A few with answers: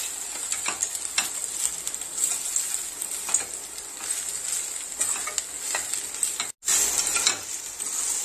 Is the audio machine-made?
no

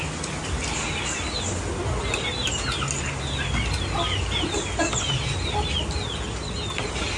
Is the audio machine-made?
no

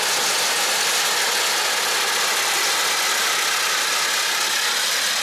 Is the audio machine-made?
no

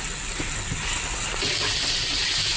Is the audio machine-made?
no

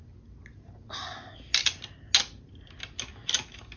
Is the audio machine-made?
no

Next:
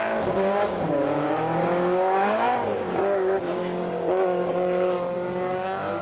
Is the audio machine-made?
yes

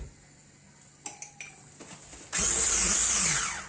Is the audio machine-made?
no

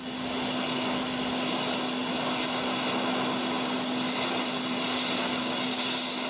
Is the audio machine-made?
no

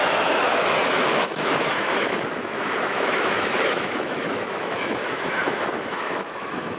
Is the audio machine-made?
yes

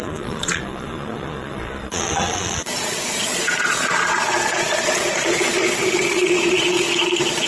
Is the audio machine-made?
yes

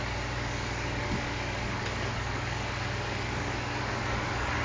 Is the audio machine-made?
yes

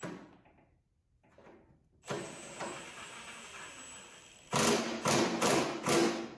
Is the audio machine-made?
no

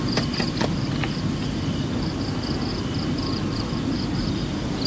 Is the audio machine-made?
no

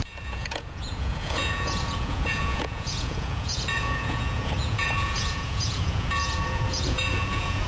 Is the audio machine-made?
yes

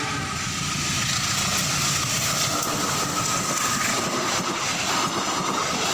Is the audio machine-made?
no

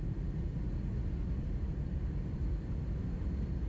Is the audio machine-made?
yes